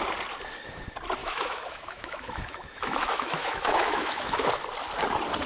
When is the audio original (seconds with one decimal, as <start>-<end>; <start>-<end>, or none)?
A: 0.0-1.2; 4.5-5.5